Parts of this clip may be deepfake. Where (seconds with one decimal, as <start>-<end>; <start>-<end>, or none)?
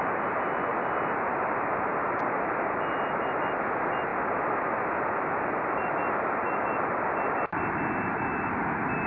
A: none